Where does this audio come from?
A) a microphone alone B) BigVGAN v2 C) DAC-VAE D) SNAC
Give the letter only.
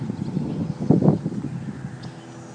A